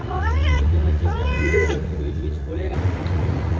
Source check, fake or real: fake